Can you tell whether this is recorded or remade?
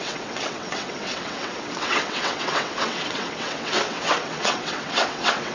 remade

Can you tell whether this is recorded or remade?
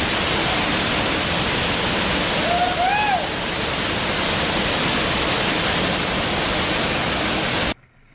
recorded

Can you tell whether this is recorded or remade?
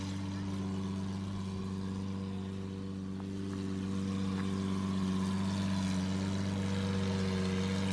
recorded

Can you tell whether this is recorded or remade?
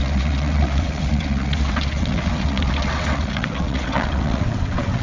remade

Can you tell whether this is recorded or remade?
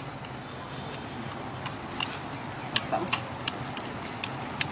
recorded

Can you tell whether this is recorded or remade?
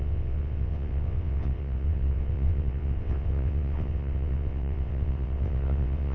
remade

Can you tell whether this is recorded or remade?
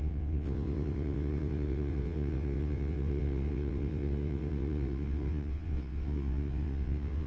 remade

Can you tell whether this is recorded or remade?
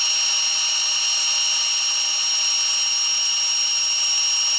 recorded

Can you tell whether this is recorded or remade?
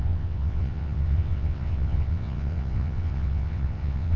remade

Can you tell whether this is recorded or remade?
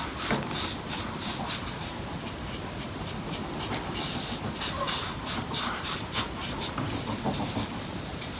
recorded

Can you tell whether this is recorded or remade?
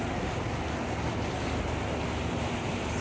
recorded